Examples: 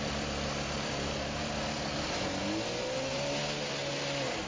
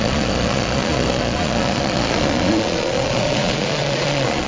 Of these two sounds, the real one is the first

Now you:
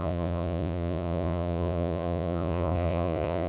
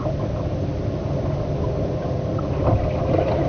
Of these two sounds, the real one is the second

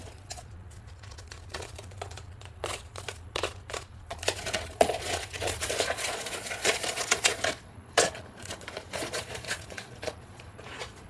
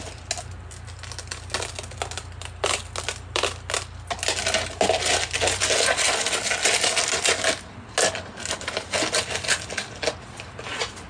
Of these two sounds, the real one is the second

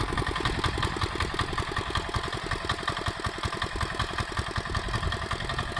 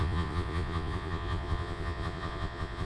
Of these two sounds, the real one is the first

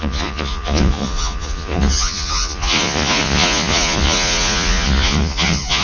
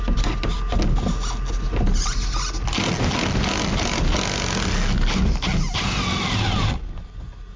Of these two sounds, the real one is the second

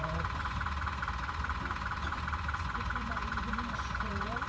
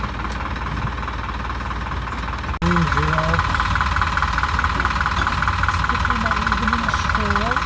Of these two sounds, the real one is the second